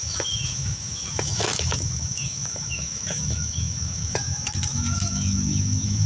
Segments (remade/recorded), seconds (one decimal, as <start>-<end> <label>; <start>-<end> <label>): 0.0-6.1 remade